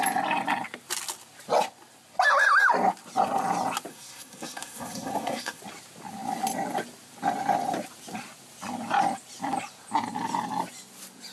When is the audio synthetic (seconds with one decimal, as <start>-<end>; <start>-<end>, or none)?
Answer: 3.9-5.6